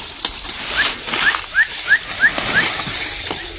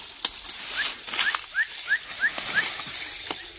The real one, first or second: second